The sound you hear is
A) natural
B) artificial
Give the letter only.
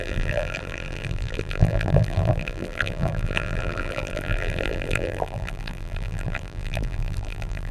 B